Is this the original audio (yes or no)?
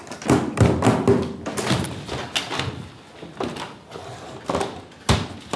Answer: yes